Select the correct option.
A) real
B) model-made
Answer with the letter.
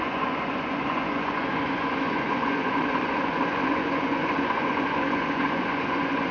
B